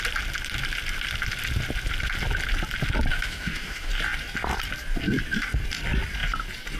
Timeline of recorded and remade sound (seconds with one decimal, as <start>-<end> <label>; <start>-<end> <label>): 0.0-3.1 recorded; 3.1-3.9 remade; 3.9-6.8 recorded